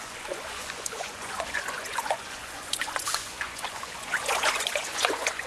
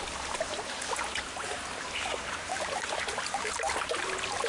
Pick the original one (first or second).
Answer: second